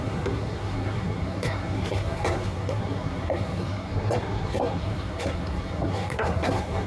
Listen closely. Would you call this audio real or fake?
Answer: fake